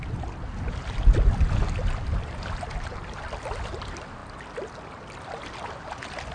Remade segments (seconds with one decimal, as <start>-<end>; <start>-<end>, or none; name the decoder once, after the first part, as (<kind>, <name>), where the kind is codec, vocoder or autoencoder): none